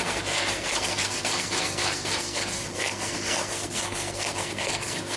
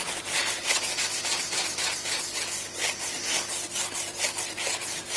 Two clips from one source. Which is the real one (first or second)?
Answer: second